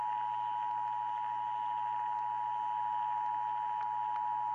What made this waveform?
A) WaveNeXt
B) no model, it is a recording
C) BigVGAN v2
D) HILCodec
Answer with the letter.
B